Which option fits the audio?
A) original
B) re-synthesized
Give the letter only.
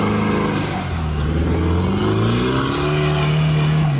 A